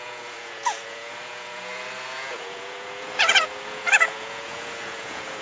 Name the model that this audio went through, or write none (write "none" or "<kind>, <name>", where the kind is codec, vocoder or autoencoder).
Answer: vocoder, Vocos